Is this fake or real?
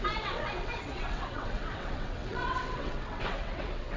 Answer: fake